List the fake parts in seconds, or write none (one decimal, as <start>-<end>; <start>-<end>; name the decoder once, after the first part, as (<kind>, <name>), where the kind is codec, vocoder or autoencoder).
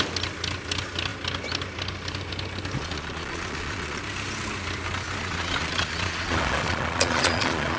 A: 2.8-4.0 (vocoder, Vocos); 5.2-7.8